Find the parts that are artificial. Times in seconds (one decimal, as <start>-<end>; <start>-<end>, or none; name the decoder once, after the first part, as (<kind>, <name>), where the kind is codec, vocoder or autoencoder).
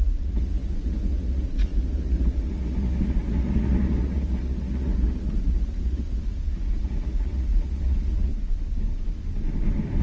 0.0-8.3 (vocoder, Vocos)